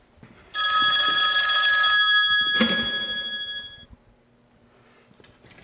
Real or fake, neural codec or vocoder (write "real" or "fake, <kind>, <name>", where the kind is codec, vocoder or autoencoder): real